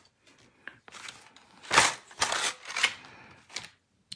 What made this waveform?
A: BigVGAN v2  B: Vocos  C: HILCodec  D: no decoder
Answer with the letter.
D